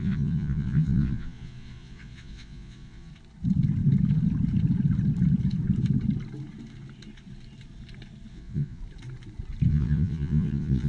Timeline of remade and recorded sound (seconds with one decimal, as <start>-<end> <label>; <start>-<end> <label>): 0.0-3.1 remade; 3.1-8.3 recorded; 8.3-8.8 remade; 8.8-9.7 recorded; 9.7-10.9 remade